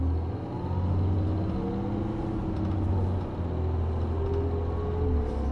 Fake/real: real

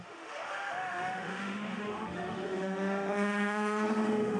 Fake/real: fake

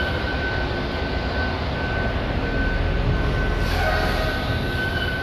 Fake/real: real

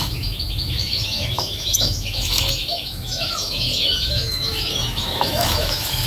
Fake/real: fake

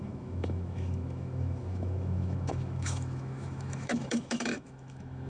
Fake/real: fake